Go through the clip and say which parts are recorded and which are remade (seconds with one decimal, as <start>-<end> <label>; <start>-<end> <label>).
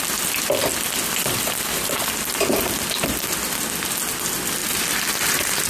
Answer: 0.0-4.6 recorded; 4.6-5.7 remade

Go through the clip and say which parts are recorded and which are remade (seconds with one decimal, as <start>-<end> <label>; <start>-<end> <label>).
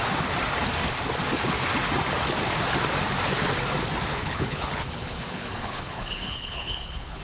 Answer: 0.0-4.1 recorded; 4.1-7.2 remade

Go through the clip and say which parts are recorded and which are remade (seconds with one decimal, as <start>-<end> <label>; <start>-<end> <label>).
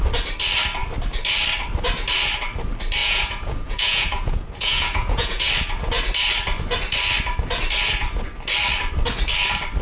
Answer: 0.0-3.0 recorded; 3.0-5.5 remade; 5.5-9.8 recorded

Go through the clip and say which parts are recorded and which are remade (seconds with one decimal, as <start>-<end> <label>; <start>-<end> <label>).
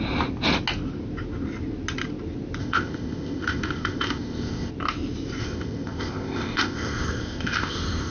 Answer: 0.0-2.6 recorded; 2.6-4.7 remade; 4.7-5.4 recorded; 5.4-8.1 remade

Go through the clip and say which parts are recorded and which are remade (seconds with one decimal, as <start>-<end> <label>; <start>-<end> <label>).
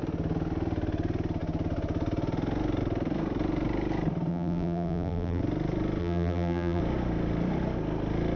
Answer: 0.0-4.3 recorded; 4.3-5.4 remade; 5.4-6.0 recorded; 6.0-6.8 remade; 6.8-8.4 recorded